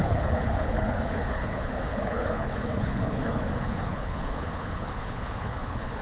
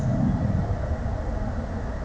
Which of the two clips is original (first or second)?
second